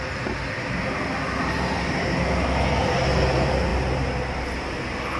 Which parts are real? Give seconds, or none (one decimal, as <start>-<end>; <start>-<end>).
0.0-5.2